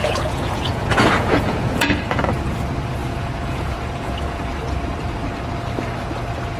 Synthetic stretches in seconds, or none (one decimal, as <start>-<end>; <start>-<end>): 0.0-2.2; 3.0-4.5